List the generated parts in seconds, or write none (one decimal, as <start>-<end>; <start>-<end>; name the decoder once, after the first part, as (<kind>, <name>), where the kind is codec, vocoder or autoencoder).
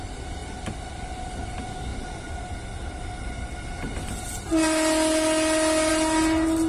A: none